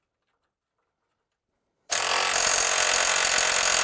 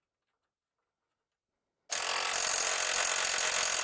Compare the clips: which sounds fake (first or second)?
first